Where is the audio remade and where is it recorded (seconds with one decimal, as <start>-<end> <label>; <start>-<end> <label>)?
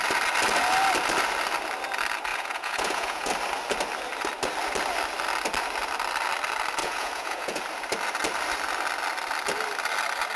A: 0.0-2.3 recorded; 2.3-3.3 remade; 3.3-6.8 recorded; 6.8-7.6 remade; 7.6-10.4 recorded